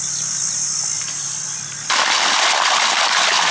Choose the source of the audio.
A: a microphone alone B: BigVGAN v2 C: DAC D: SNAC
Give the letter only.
B